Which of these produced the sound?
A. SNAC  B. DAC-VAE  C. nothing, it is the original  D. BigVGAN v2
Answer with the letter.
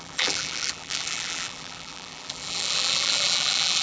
D